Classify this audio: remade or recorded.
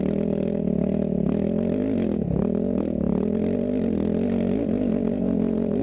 recorded